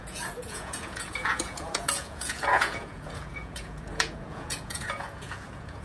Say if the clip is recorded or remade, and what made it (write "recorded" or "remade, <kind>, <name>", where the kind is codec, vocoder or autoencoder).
remade, vocoder, Vocos